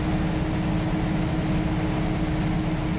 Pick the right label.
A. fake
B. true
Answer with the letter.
B